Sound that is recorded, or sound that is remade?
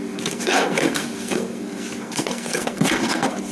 remade